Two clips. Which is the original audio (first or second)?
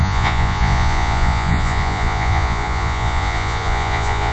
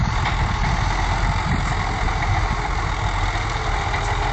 second